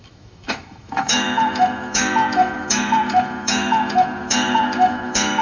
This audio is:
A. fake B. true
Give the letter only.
A